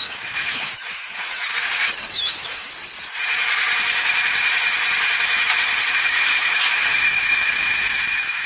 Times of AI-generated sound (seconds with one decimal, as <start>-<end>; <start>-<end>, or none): 0.0-1.5; 2.1-2.7; 5.9-8.5